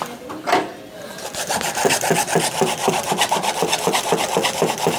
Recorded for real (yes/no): yes